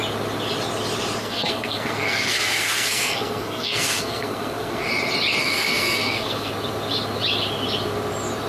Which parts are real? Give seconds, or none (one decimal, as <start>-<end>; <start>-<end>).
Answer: 0.0-1.2; 4.9-5.4; 6.5-8.5